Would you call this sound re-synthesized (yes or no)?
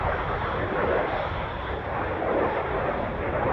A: no